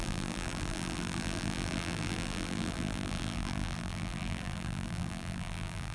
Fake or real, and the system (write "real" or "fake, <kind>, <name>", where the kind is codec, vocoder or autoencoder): fake, vocoder, BigVGAN v2